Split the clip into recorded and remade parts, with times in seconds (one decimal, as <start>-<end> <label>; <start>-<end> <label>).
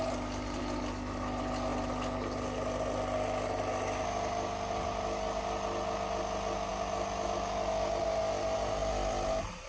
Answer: 0.0-9.7 recorded